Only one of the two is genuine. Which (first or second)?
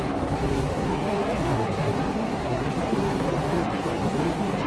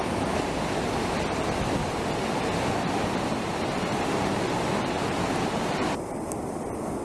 second